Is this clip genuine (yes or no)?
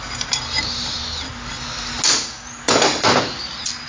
yes